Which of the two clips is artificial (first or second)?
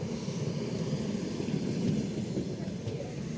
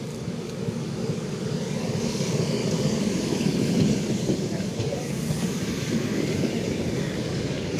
second